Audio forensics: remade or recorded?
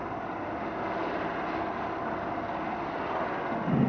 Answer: recorded